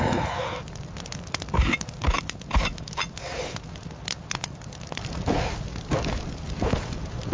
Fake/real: fake